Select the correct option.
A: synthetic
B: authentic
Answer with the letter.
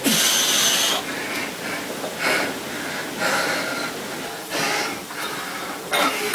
B